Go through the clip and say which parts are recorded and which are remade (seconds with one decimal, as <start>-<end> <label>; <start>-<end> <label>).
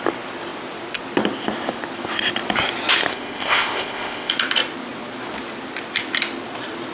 0.0-3.1 recorded; 3.1-4.3 remade; 4.3-6.9 recorded